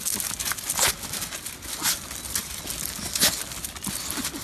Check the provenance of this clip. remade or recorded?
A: recorded